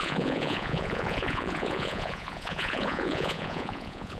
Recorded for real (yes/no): no